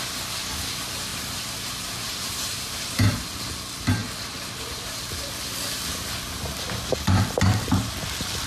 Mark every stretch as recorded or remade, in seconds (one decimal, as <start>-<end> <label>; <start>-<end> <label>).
0.0-1.1 recorded; 1.1-3.1 remade; 3.1-8.5 recorded